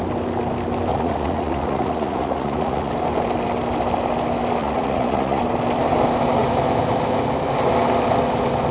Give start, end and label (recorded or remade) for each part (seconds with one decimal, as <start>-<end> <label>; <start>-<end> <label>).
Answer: 0.0-0.9 recorded; 0.9-2.9 remade; 2.9-4.6 recorded; 4.6-5.4 remade; 5.4-8.7 recorded